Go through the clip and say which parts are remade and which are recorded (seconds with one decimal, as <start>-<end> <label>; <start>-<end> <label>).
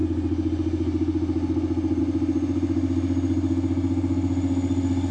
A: 0.0-5.1 recorded